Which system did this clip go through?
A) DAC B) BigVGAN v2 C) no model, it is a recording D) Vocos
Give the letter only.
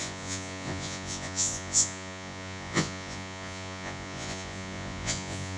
D